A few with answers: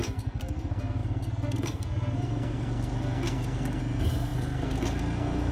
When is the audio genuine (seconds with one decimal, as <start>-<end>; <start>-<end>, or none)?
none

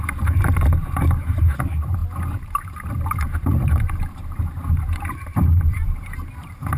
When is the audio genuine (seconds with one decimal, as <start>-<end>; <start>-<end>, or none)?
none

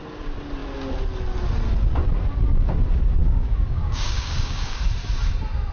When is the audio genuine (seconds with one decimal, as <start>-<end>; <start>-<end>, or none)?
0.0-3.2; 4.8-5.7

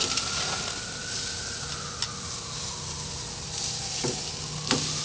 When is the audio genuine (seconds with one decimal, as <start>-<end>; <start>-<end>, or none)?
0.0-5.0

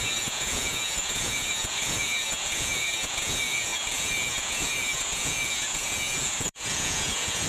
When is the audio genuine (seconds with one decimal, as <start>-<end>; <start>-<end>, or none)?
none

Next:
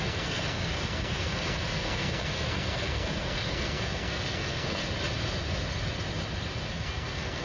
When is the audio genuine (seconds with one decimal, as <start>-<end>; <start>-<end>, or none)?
4.8-6.7

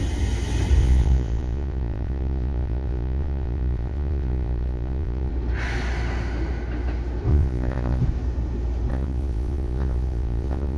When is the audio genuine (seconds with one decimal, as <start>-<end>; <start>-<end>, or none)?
0.0-0.8; 5.3-7.3; 8.0-8.9

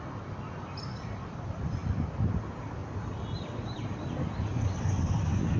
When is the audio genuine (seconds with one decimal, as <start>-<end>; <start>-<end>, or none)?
0.0-5.6